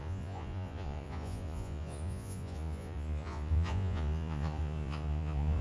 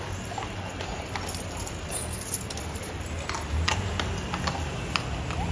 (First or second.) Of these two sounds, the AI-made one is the first